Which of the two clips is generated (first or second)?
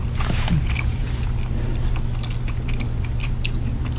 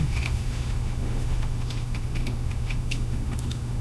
second